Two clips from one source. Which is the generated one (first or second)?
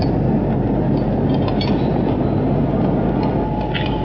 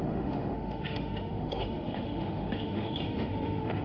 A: second